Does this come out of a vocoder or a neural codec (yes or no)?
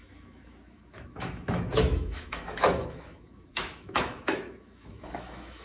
yes